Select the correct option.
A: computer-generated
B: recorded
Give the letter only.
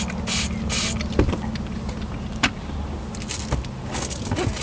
B